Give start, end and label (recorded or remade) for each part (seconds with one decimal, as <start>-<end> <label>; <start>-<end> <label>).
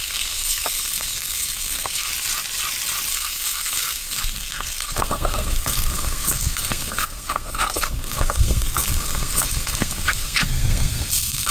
0.0-2.1 remade; 2.1-3.1 recorded; 3.1-11.5 remade